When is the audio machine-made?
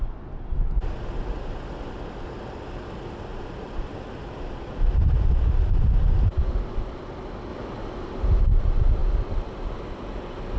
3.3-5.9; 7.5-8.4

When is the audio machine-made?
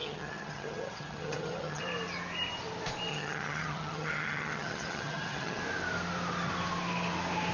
0.0-1.8; 3.1-5.6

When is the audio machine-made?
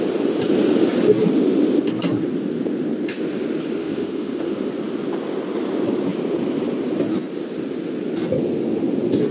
3.8-4.7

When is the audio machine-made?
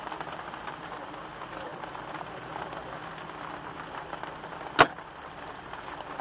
none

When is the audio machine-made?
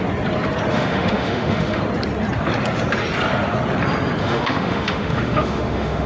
0.7-1.8; 4.2-6.1